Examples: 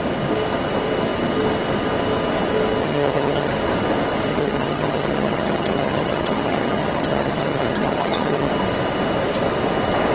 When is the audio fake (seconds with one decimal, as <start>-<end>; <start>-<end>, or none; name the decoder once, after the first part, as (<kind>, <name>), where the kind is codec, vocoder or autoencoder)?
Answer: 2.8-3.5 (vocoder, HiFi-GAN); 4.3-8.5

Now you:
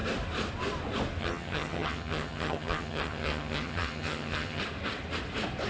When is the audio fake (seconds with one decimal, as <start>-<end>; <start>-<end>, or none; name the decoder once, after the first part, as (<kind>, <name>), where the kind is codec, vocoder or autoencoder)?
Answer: 1.2-4.6 (vocoder, HiFi-GAN)

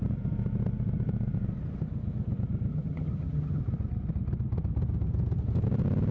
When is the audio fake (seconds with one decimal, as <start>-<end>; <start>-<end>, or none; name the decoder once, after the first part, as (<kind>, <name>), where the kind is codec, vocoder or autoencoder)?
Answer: 2.7-3.6 (vocoder, HiFi-GAN)

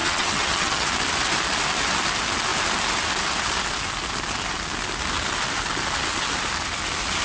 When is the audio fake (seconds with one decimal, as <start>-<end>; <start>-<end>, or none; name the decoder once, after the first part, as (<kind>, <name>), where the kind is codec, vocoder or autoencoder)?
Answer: 0.0-0.9 (vocoder, HiFi-GAN)

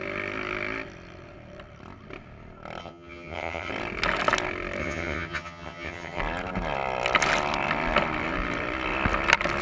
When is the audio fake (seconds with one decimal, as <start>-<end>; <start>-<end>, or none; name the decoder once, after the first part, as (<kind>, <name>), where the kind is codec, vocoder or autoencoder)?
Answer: 2.8-3.7 (vocoder, HiFi-GAN); 4.8-6.2